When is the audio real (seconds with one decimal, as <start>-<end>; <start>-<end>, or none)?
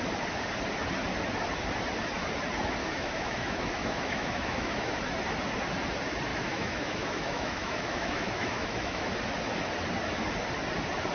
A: 0.0-2.8; 5.0-6.3; 9.1-11.1